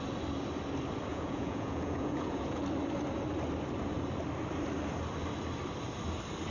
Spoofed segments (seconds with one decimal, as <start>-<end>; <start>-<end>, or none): 1.1-2.6